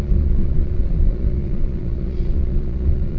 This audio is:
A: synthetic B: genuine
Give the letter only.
A